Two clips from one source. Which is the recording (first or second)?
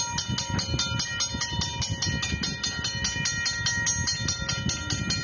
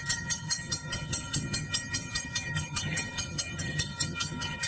first